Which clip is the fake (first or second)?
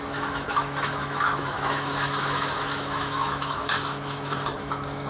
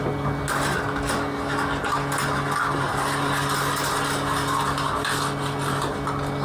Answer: first